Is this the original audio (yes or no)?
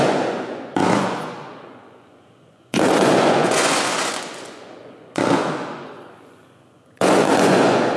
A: no